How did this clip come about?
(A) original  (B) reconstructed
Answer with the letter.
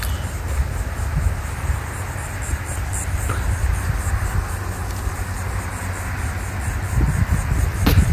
A